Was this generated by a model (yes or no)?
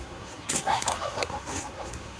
yes